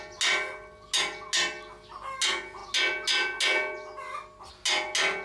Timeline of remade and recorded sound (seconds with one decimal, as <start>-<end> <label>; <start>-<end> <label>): 0.0-5.2 recorded